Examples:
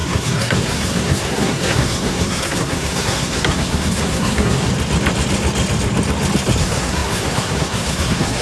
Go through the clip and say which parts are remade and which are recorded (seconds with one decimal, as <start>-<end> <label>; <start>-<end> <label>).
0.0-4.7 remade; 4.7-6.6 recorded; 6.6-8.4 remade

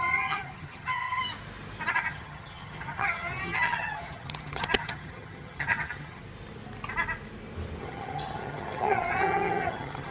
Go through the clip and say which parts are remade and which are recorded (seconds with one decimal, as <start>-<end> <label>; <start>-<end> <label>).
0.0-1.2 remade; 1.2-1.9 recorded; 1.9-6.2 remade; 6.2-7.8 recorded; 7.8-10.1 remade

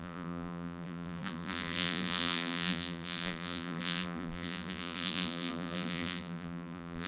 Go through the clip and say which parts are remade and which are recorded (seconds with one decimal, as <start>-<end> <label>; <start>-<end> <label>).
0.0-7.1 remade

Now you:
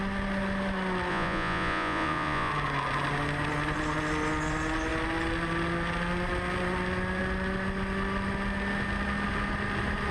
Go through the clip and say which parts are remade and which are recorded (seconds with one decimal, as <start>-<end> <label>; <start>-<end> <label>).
0.0-1.1 recorded; 1.1-2.5 remade; 2.5-10.1 recorded